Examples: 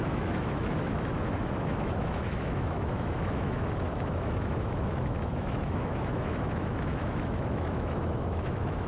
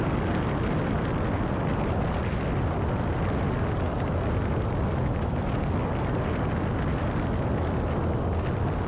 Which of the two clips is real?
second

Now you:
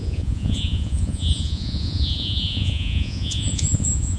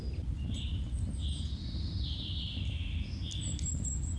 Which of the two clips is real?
second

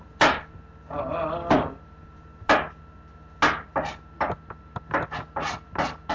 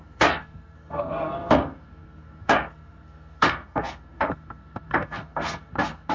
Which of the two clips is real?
first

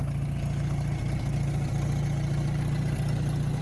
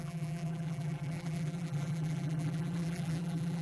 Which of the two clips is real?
first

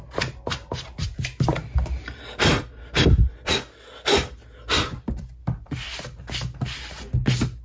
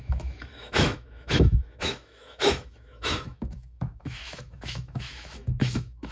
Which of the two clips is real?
first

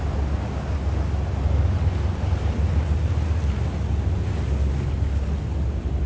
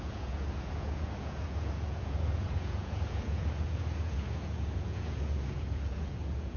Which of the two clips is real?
first